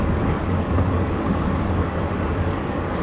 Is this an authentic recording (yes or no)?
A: no